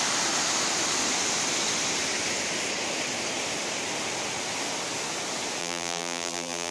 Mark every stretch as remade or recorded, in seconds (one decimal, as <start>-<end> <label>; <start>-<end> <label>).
0.0-5.6 recorded; 5.6-6.7 remade